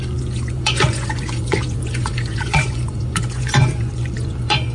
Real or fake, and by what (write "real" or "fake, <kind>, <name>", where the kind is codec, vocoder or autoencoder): fake, vocoder, Vocos